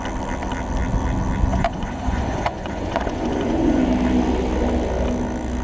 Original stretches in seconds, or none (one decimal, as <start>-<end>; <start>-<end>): 0.0-1.5; 3.9-5.6